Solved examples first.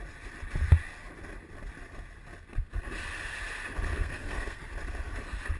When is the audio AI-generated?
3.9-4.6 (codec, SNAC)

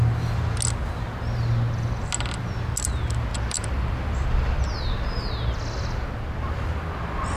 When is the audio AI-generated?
3.3-4.9 (vocoder, BigVGAN v2)

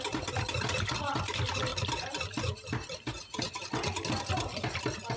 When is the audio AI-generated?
none

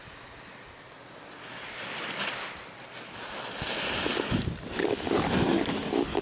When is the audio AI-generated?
none

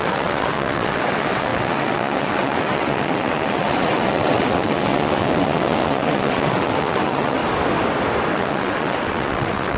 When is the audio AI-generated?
0.0-7.4 (vocoder, WaveNeXt); 8.3-9.8

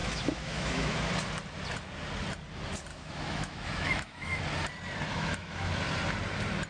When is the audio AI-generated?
0.0-1.1 (autoencoder, DAC-VAE); 2.9-4.4; 5.1-5.7